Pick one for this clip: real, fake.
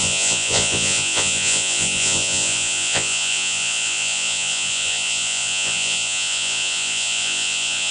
fake